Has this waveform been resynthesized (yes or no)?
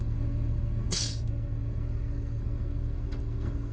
yes